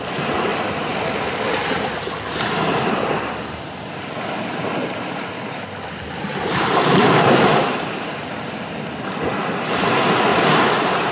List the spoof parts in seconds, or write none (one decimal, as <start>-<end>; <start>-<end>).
6.3-8.1; 10.3-11.1